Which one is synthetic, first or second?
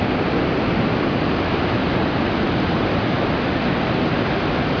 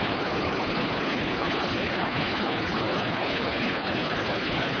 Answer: second